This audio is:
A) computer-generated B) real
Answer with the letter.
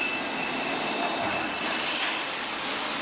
B